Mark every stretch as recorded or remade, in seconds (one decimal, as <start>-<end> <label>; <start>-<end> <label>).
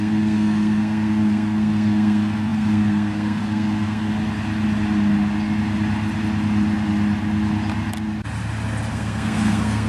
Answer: 0.0-4.1 remade; 4.1-8.9 recorded; 8.9-9.9 remade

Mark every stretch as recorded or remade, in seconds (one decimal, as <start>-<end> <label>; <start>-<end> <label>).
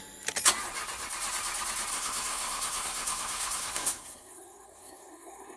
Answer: 0.0-1.9 recorded; 1.9-5.6 remade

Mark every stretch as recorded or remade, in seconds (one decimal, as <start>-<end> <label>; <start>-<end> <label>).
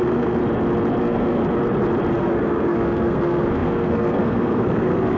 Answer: 0.0-0.4 remade; 0.4-1.0 recorded; 1.0-1.4 remade; 1.4-2.2 recorded; 2.2-5.2 remade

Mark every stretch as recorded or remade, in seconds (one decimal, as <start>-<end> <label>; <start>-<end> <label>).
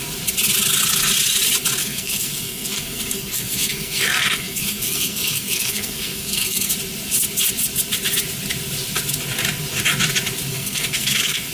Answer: 0.0-1.8 recorded; 1.8-6.7 remade; 6.7-10.5 recorded; 10.5-11.5 remade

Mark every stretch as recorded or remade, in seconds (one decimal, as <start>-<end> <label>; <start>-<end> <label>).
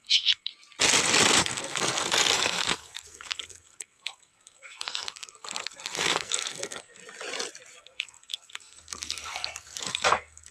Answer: 0.0-0.5 remade; 0.5-1.4 recorded; 1.4-7.0 remade; 7.0-7.8 recorded; 7.8-10.5 remade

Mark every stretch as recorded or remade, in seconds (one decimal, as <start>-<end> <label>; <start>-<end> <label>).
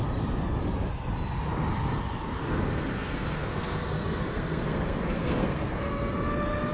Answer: 0.0-2.4 recorded; 2.4-5.9 remade; 5.9-6.7 recorded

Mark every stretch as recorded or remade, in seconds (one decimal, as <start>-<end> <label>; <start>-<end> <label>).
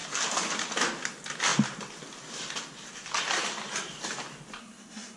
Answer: 0.0-4.6 recorded; 4.6-5.2 remade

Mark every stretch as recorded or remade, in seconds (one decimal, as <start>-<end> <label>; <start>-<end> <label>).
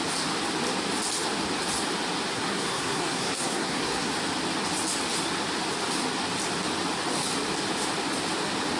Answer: 0.0-2.3 recorded; 2.3-4.1 remade; 4.1-8.8 recorded